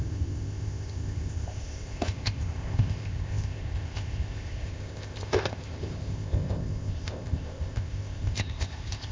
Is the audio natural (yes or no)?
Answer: no